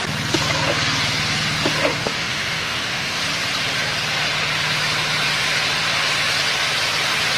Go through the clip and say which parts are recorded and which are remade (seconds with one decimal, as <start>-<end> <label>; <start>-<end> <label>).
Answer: 0.0-2.0 recorded; 2.0-3.2 remade; 3.2-7.4 recorded